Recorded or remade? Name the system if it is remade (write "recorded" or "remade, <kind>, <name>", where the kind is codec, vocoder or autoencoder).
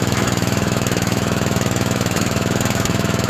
remade, autoencoder, DAC-VAE